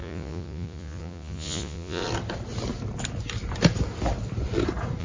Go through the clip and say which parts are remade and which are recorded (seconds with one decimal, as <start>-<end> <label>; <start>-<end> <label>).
0.0-2.0 remade; 2.0-5.0 recorded